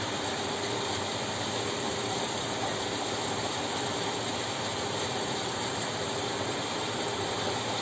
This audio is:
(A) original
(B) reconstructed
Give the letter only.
B